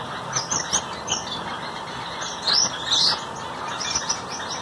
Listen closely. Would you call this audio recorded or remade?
recorded